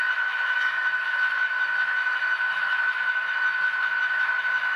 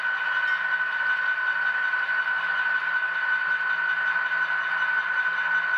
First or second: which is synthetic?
first